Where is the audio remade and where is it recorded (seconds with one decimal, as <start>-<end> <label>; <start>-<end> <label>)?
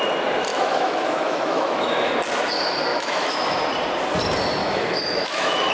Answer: 0.0-0.5 recorded; 0.5-2.1 remade; 2.1-2.9 recorded; 2.9-3.6 remade; 3.6-4.6 recorded; 4.6-5.7 remade